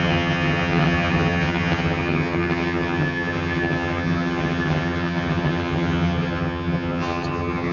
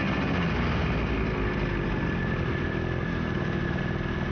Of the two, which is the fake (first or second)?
first